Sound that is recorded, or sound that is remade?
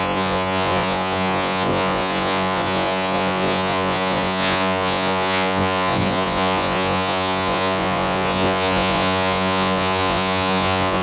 remade